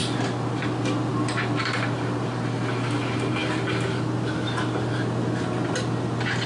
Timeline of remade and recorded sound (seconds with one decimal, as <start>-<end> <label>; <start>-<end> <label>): 0.0-6.5 recorded